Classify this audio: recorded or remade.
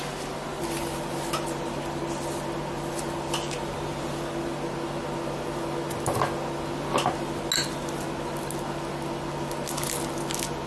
recorded